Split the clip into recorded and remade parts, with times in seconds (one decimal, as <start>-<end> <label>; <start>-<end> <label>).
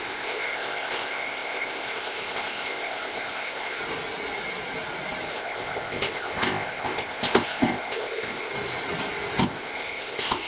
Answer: 0.0-3.8 remade; 3.8-5.3 recorded; 5.3-8.5 remade; 8.5-9.4 recorded; 9.4-10.5 remade